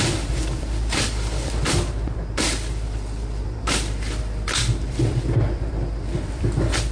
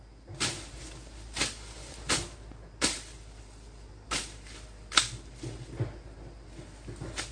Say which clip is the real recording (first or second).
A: second